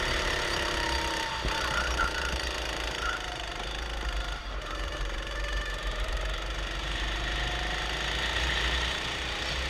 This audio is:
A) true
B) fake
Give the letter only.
B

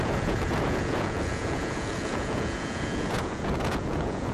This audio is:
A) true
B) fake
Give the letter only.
B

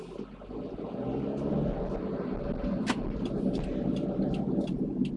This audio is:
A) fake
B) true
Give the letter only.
B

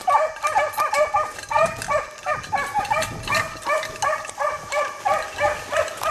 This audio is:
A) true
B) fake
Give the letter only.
A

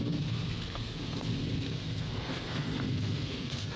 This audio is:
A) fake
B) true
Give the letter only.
A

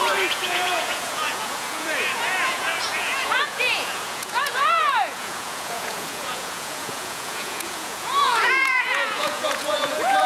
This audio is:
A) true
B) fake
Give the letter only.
B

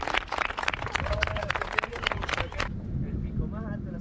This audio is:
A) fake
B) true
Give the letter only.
B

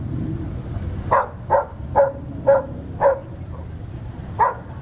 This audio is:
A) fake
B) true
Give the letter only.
B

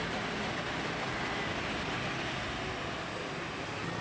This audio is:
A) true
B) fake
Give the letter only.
A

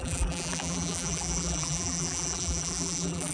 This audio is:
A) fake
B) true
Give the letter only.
A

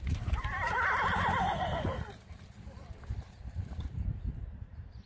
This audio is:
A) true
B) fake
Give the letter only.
B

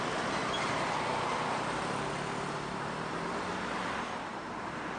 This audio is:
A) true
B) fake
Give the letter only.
A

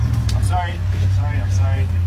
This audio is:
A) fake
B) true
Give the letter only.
B